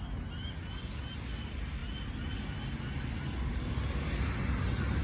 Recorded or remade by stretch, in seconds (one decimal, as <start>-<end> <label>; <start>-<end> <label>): 0.0-5.0 recorded

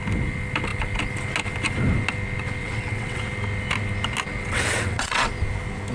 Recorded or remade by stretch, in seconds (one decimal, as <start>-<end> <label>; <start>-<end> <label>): 0.0-2.6 recorded; 2.6-3.2 remade; 3.2-4.4 recorded; 4.4-5.3 remade; 5.3-5.9 recorded